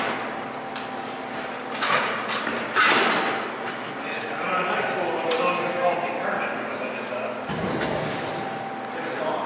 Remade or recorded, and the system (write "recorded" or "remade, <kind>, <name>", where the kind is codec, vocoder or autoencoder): recorded